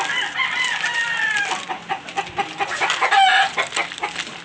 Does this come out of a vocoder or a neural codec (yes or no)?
no